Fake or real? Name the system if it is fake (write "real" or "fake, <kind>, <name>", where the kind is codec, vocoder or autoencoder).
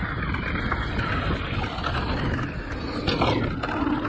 real